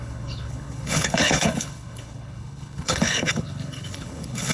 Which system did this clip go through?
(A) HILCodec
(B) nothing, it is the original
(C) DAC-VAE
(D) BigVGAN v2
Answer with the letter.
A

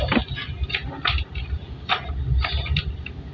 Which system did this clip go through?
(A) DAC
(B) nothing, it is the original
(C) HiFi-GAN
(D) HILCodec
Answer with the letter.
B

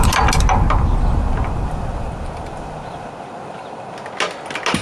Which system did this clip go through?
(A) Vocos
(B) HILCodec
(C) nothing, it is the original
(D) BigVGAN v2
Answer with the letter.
C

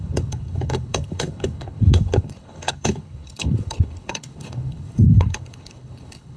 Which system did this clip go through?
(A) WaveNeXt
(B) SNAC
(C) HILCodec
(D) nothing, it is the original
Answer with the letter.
C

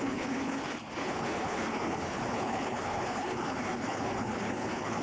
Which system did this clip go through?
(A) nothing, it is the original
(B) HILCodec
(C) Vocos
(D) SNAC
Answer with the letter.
B